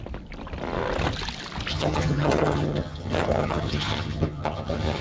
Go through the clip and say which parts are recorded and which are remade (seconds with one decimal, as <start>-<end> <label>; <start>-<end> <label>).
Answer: 0.0-1.7 recorded; 1.7-5.0 remade